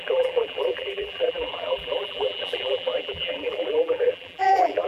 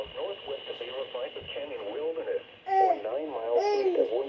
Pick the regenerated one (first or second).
first